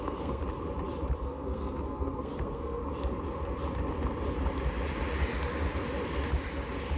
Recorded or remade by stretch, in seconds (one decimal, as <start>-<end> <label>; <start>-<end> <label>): 0.0-0.4 remade; 0.4-1.2 recorded; 1.2-2.8 remade; 2.8-7.0 recorded